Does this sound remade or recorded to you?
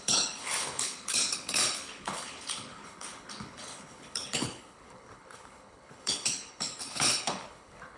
remade